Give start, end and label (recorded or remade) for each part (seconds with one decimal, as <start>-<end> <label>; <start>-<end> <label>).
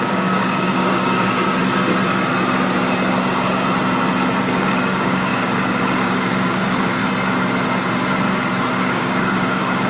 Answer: 0.0-1.6 remade; 1.6-4.4 recorded; 4.4-7.0 remade; 7.0-8.7 recorded; 8.7-9.9 remade